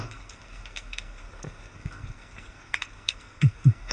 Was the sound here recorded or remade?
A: remade